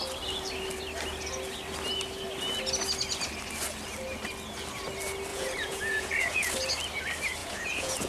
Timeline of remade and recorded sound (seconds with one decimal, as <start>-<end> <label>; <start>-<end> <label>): 0.0-5.3 recorded; 5.3-6.5 remade; 6.5-7.4 recorded; 7.4-8.1 remade

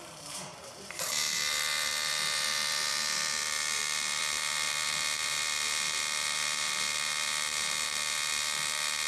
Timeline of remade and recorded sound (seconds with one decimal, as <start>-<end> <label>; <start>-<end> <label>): 0.0-9.1 remade

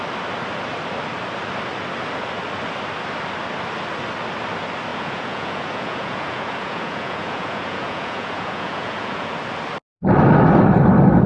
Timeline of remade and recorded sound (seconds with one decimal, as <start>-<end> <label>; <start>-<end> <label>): 0.0-4.9 recorded; 4.9-9.3 remade; 9.3-11.3 recorded